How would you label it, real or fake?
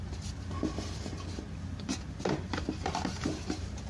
real